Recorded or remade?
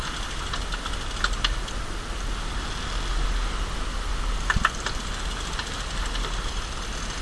recorded